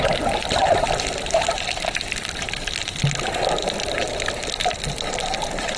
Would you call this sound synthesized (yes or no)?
yes